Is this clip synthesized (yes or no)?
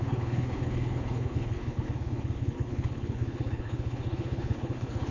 yes